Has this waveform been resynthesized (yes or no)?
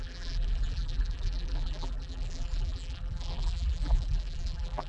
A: yes